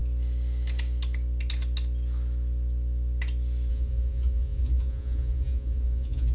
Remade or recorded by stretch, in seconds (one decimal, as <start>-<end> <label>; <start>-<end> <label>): 0.0-3.7 recorded; 3.7-6.3 remade